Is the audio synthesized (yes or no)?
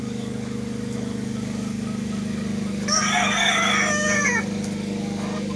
yes